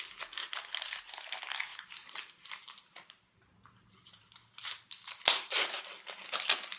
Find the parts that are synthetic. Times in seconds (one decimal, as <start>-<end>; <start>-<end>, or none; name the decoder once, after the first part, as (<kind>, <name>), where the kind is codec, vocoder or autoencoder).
0.4-1.0 (vocoder, BigVGAN v2); 1.7-5.8